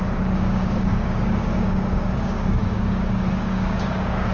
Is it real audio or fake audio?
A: fake